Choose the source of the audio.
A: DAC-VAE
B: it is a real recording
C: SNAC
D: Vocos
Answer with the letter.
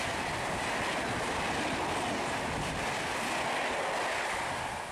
B